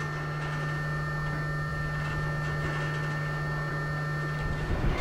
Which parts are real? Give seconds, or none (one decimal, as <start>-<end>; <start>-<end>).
0.0-5.0